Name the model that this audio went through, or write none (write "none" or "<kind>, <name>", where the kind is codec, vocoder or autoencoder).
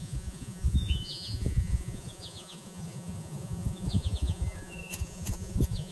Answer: vocoder, Vocos